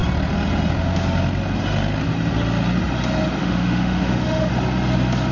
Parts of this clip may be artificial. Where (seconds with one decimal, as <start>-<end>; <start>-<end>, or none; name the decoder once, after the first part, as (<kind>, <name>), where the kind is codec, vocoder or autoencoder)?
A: 3.4-4.5 (autoencoder, DAC-VAE)

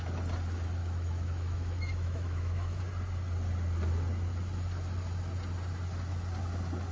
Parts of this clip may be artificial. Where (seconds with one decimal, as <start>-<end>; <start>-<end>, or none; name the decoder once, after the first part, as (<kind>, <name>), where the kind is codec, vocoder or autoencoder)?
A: 0.8-2.8 (autoencoder, DAC-VAE)

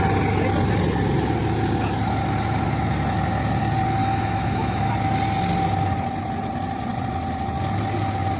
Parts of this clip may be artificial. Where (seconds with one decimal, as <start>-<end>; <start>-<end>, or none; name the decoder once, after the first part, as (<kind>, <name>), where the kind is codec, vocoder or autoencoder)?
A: 4.0-4.9 (autoencoder, DAC-VAE)